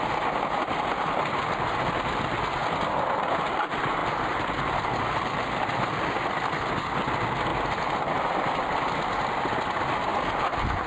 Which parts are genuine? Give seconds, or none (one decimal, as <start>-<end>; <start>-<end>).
0.0-4.0; 6.0-10.1